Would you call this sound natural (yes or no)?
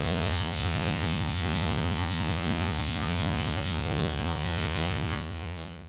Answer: no